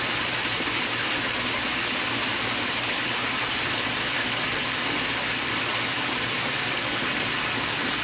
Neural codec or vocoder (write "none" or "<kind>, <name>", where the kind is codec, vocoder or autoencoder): none